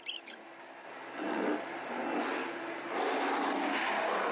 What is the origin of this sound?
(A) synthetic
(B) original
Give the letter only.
B